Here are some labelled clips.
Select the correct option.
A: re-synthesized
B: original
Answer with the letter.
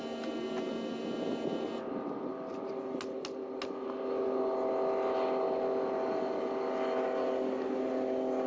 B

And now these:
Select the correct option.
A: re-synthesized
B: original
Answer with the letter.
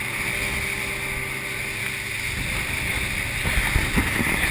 B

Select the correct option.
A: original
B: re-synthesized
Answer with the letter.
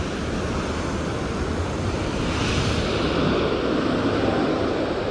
A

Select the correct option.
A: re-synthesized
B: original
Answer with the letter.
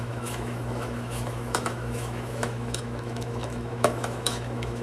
A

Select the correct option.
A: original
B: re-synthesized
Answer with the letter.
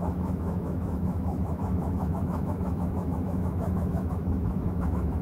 B